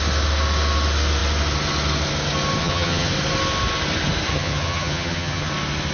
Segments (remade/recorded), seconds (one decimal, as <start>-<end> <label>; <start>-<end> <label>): 0.0-2.6 recorded; 2.6-3.1 remade; 3.1-4.3 recorded; 4.3-5.5 remade; 5.5-5.9 recorded